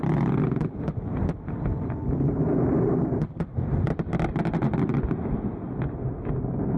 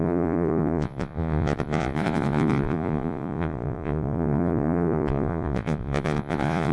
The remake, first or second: second